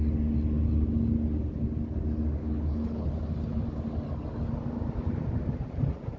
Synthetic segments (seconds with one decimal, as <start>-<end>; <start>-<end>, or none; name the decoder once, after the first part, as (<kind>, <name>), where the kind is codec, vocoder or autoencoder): 2.4-3.1 (codec, HILCodec)